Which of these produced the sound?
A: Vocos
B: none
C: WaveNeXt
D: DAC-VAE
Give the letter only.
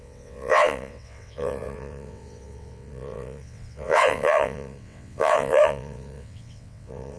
C